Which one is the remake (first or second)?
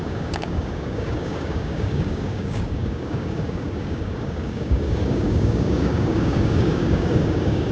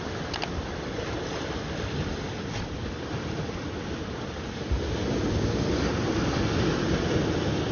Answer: first